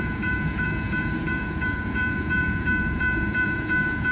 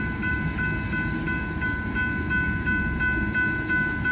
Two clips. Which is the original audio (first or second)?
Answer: second